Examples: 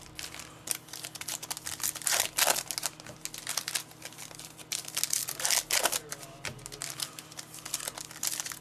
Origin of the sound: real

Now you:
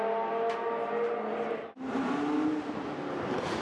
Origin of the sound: real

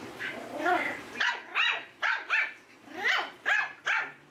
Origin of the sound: real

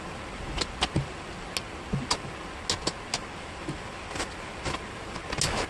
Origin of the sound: real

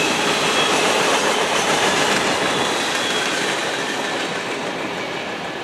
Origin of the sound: fake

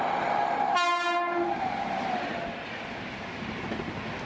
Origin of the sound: real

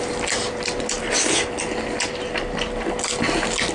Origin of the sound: real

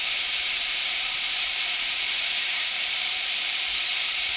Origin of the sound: fake